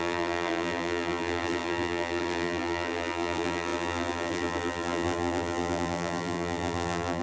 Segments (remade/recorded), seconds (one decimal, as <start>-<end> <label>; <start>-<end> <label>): 0.0-7.2 remade